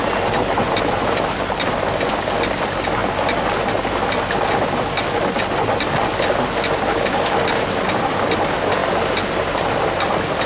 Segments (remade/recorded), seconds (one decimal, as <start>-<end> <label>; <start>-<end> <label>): 0.0-10.5 recorded